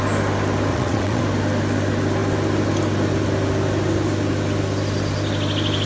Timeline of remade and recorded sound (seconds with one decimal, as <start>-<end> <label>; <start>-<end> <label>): 0.0-0.7 recorded; 0.7-1.2 remade; 1.2-5.9 recorded